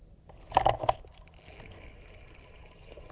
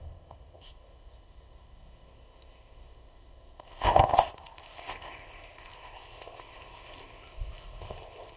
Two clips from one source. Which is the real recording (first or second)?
first